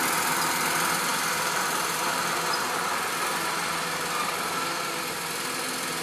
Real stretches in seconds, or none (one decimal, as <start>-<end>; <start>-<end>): 0.0-6.0